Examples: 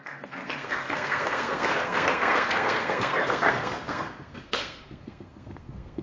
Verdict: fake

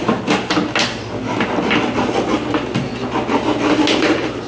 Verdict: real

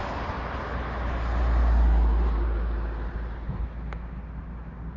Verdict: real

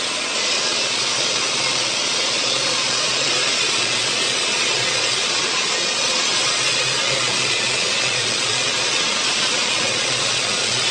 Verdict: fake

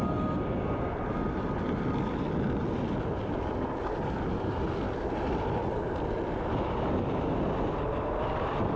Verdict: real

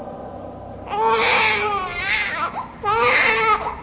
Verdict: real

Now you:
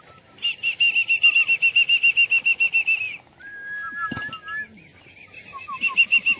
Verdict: real